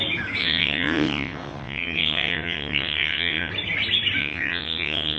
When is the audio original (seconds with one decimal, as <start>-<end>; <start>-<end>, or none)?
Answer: 0.0-0.4; 3.5-4.2